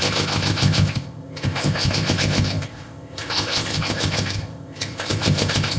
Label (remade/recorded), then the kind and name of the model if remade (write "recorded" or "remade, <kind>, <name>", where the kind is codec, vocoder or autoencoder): remade, codec, ZipCodec